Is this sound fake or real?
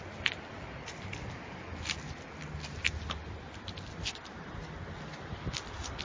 real